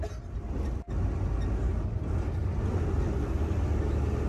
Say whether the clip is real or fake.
real